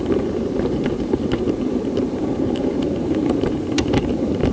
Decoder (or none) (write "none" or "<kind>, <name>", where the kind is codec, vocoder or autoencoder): vocoder, BigVGAN v2